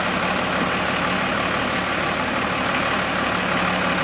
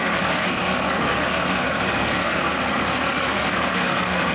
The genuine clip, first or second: first